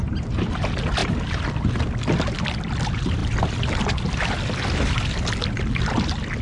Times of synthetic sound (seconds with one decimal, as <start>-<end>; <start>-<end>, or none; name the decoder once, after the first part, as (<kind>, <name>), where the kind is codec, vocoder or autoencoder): none